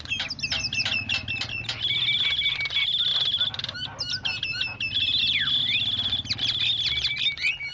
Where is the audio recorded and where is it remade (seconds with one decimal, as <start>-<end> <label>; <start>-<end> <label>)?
0.0-7.7 recorded